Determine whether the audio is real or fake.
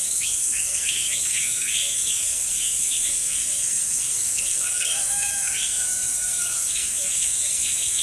fake